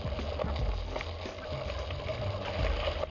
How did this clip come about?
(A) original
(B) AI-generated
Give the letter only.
A